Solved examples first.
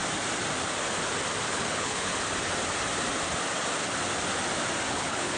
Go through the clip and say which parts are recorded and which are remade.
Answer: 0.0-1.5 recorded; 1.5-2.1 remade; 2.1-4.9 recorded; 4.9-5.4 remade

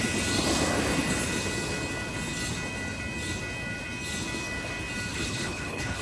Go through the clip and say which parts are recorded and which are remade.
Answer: 0.0-5.1 recorded; 5.1-6.0 remade

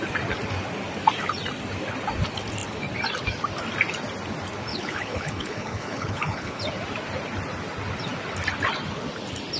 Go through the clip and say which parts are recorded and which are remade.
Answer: 0.0-4.7 recorded; 4.7-6.6 remade; 6.6-9.6 recorded

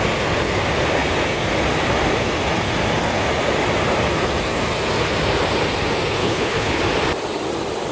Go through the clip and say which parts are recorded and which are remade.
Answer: 0.0-6.2 recorded; 6.2-6.8 remade; 6.8-7.9 recorded